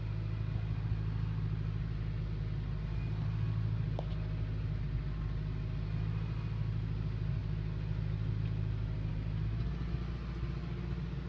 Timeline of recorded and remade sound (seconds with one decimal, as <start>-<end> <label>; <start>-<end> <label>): 0.0-11.3 recorded